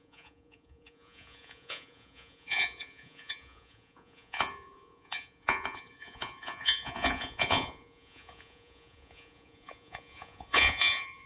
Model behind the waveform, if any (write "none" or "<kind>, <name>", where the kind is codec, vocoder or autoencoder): vocoder, Vocos